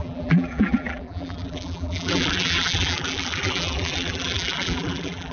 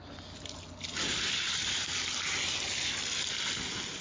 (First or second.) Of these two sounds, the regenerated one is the first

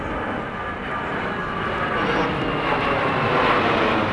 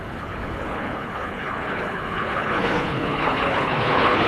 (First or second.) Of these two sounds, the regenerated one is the second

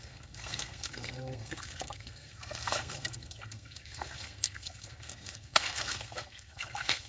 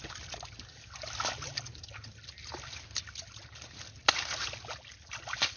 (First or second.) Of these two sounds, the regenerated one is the first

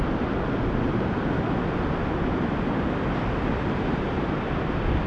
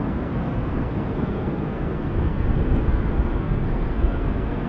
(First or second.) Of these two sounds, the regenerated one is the second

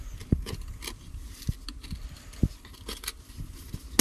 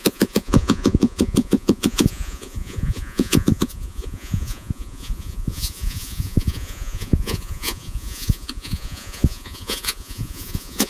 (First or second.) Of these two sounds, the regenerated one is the second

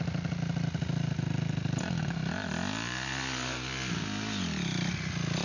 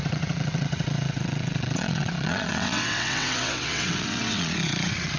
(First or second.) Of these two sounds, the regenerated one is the second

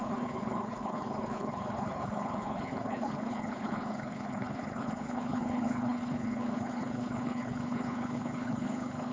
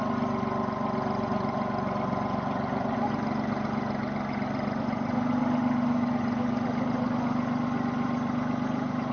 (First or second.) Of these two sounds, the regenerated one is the first